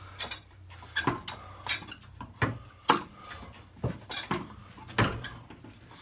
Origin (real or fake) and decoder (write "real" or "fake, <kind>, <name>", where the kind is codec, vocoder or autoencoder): real